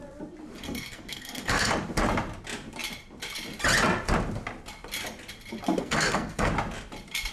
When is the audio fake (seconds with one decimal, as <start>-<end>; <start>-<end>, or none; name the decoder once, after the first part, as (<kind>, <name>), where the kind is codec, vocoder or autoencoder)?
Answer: 0.6-1.7 (codec, SNAC); 5.8-6.5

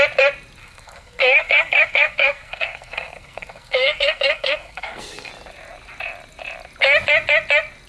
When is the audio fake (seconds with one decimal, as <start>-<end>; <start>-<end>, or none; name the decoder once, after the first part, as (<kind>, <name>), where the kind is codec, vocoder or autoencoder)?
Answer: 0.6-5.3 (codec, SNAC)

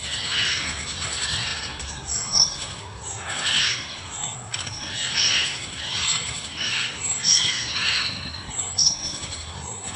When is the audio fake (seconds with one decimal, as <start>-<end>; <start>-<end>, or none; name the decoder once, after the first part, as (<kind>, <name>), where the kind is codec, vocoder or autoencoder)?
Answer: 0.0-10.0 (codec, SNAC)

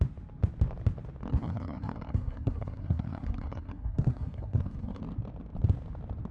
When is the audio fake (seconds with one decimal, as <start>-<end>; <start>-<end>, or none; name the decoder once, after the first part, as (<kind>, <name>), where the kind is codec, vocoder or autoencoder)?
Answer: 1.3-5.0 (codec, SNAC)

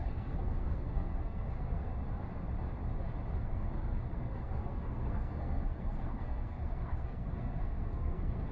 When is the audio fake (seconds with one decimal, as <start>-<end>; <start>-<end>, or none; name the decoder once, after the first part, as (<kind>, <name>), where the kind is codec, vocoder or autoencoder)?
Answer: 0.0-1.9 (codec, SNAC); 3.3-8.5

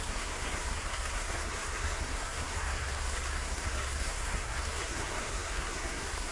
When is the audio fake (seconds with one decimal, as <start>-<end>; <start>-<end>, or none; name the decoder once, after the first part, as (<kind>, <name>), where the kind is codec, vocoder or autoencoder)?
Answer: 0.0-6.3 (codec, SNAC)

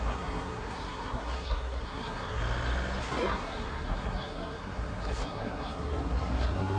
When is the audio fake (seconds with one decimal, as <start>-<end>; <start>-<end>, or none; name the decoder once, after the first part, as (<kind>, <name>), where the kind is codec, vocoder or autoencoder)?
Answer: 0.0-2.4 (codec, SNAC); 3.0-6.8